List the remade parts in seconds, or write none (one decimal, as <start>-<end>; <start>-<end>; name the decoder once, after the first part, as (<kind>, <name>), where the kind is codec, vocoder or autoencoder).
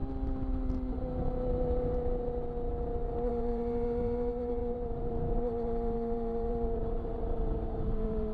3.3-8.3 (vocoder, BigVGAN v2)